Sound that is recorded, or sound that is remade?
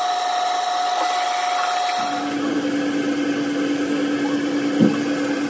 recorded